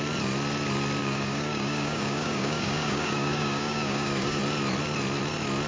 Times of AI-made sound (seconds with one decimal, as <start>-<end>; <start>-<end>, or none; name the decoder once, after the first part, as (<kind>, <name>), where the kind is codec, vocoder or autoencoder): 1.0-4.4 (codec, DAC)